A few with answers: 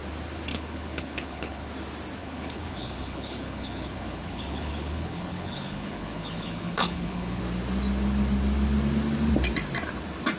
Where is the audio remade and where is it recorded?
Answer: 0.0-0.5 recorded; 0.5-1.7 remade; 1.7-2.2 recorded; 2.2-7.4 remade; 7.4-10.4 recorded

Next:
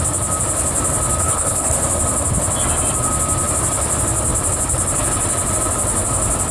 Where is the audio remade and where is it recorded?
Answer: 0.0-1.2 recorded; 1.2-1.7 remade; 1.7-6.5 recorded

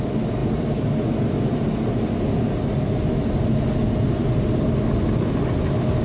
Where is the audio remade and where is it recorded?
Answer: 0.0-6.0 recorded

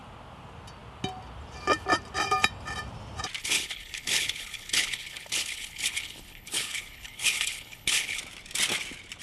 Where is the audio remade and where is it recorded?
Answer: 0.0-3.4 recorded; 3.4-8.2 remade; 8.2-9.2 recorded

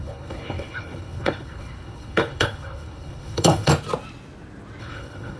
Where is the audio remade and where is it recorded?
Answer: 0.0-3.7 remade; 3.7-4.8 recorded; 4.8-5.4 remade

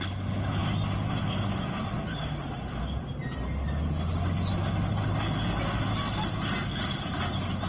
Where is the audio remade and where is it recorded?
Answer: 0.0-7.7 recorded